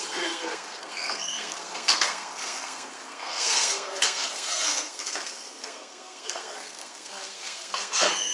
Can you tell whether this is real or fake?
fake